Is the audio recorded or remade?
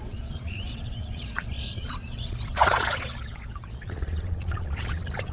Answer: remade